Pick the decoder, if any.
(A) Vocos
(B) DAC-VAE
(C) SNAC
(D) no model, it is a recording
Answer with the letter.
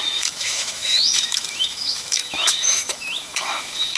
B